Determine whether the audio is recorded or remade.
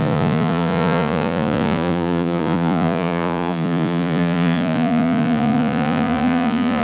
remade